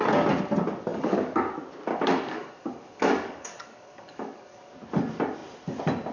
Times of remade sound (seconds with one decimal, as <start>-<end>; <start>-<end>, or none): 0.9-1.5; 1.9-4.7